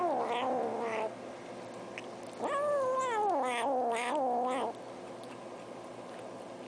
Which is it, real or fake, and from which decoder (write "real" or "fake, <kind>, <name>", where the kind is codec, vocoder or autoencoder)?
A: real